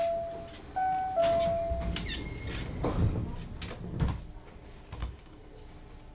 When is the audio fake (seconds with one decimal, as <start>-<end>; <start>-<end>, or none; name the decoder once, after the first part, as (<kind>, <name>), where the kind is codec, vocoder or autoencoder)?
5.0-5.5 (codec, HILCodec)